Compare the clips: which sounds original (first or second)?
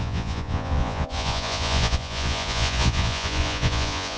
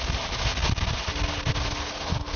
second